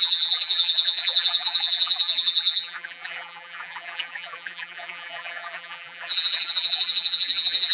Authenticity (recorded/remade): remade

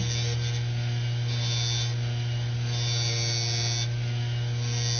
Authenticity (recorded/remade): recorded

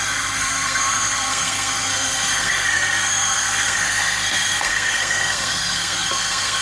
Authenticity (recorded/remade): remade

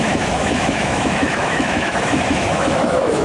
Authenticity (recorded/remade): remade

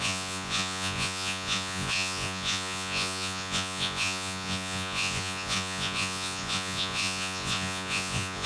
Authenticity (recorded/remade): remade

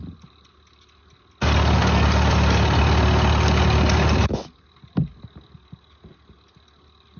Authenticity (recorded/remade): recorded